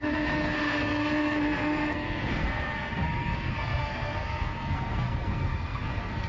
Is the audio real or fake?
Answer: fake